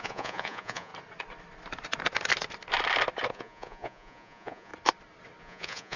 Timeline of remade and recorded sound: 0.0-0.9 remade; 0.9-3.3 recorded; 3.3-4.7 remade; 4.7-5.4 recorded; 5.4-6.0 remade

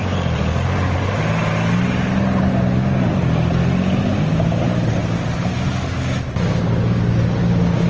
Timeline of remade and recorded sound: 0.0-7.9 recorded

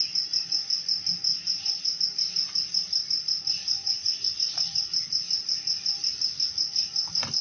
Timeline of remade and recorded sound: 0.0-1.3 recorded; 1.3-2.0 remade; 2.0-3.6 recorded; 3.6-4.3 remade; 4.3-7.4 recorded

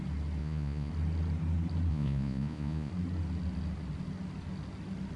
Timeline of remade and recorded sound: 0.0-0.4 recorded; 0.4-0.9 remade; 0.9-1.9 recorded; 1.9-2.9 remade; 2.9-5.2 recorded

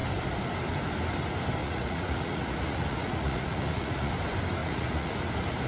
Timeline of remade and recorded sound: 0.0-1.6 recorded; 1.6-4.1 remade; 4.1-4.6 recorded; 4.6-5.1 remade; 5.1-5.7 recorded

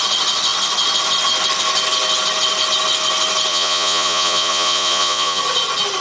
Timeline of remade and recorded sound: 0.0-3.5 recorded; 3.5-5.4 remade; 5.4-6.0 recorded

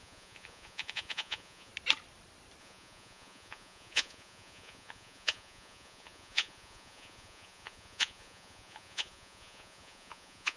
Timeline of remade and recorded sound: 0.0-1.7 remade; 1.7-2.6 recorded; 2.6-10.6 remade

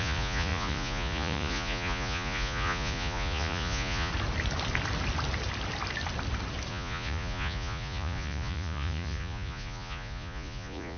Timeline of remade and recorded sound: 0.0-4.1 remade; 4.1-6.7 recorded; 6.7-11.0 remade